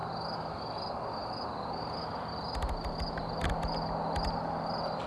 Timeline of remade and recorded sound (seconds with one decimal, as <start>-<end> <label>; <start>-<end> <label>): 0.0-5.1 recorded